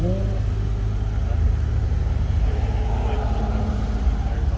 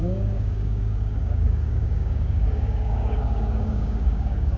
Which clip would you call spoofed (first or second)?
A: second